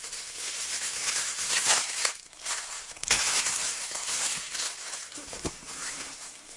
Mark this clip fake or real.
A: fake